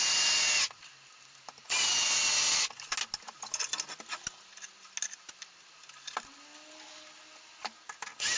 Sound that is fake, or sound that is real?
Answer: real